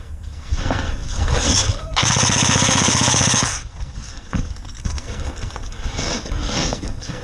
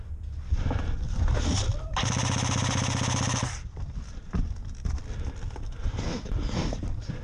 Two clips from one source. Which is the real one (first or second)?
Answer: second